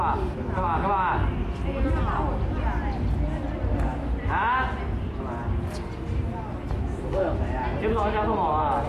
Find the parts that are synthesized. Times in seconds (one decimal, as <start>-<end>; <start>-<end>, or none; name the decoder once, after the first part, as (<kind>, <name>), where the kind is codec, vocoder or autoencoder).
none